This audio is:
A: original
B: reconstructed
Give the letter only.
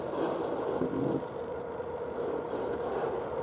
A